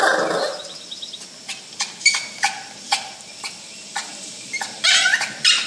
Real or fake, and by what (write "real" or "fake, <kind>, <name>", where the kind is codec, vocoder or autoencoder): real